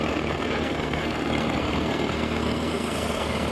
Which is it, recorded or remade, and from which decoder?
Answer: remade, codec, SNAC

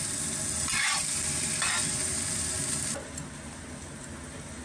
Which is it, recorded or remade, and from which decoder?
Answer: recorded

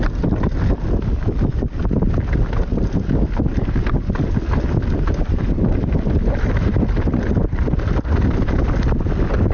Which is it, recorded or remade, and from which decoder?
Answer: recorded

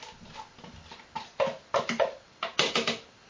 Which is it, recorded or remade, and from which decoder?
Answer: recorded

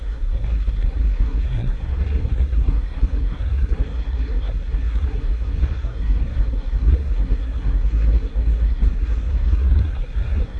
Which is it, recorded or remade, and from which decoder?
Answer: remade, codec, SNAC